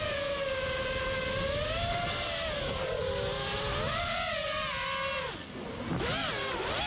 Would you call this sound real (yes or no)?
yes